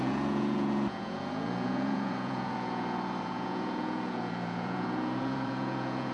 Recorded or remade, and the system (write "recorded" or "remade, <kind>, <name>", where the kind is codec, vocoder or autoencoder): remade, vocoder, Vocos